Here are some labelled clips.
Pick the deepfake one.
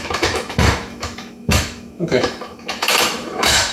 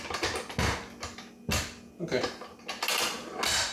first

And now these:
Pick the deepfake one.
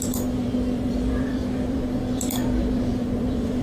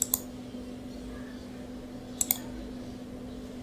first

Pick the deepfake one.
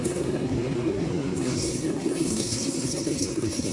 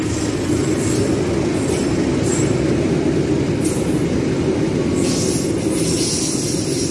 first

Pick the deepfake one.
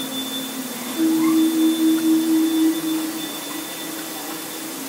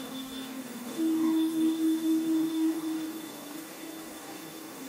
second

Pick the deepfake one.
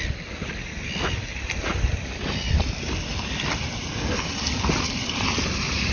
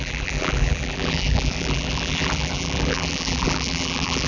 second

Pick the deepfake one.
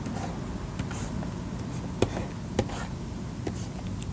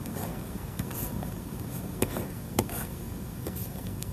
second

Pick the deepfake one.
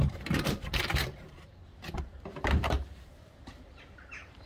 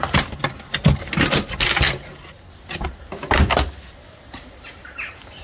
first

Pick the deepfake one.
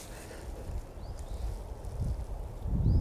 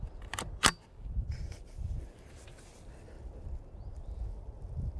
second